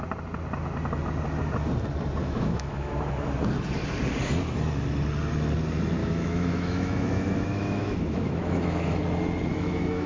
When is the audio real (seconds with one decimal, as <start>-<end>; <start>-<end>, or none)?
0.0-2.2; 2.9-6.0; 8.9-9.5